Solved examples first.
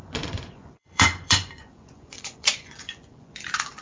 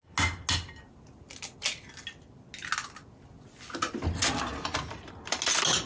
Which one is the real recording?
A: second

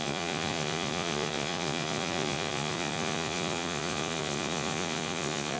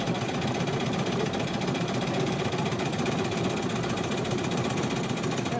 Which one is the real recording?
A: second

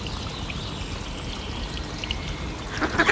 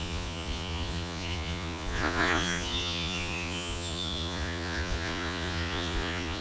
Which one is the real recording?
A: first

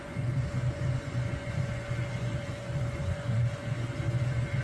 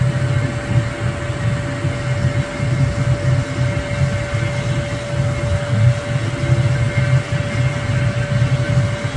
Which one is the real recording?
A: second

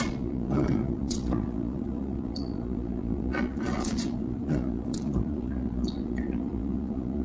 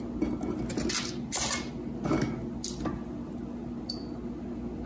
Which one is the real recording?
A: second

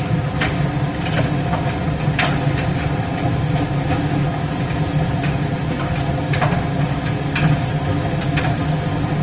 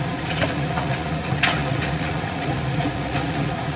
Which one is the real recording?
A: first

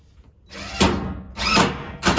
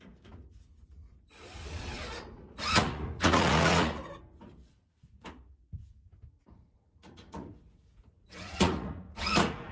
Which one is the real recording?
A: first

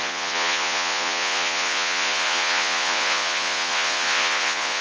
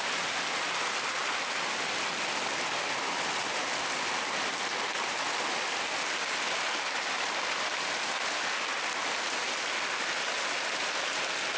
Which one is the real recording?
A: second